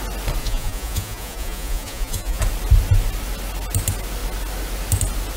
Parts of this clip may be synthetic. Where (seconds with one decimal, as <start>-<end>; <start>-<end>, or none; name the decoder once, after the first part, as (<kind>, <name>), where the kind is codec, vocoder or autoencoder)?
0.4-2.4 (vocoder, Vocos)